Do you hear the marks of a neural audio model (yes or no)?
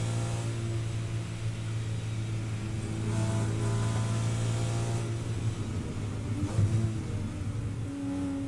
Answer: no